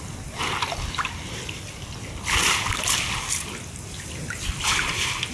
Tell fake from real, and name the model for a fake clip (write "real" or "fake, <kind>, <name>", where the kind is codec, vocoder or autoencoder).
real